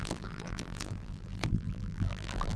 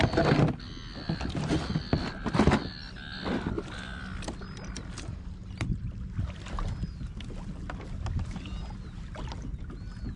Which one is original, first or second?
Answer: second